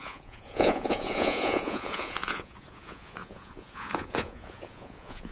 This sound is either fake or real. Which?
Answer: fake